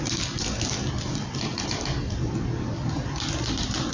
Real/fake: real